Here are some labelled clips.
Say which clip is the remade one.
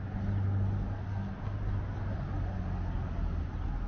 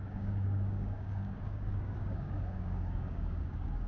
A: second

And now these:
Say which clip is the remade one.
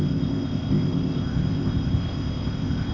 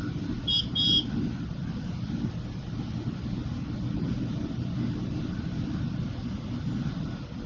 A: first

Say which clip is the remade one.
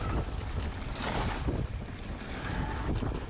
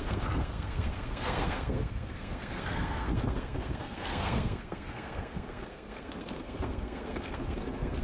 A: second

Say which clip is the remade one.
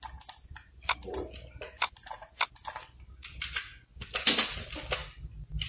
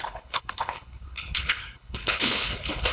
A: second